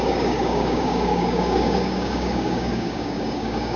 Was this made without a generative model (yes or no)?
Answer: no